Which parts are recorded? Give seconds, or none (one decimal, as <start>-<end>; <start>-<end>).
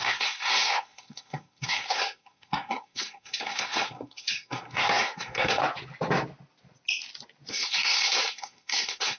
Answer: 5.6-7.5